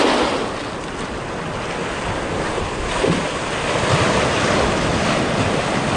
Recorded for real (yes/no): yes